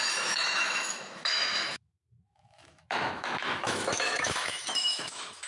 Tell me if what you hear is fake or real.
fake